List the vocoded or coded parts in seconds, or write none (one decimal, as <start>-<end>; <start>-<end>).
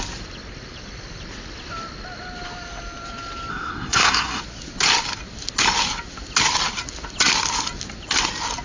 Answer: 3.5-4.4